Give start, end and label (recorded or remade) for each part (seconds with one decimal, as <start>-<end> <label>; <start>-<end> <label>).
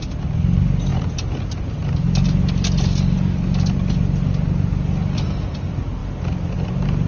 0.0-7.1 recorded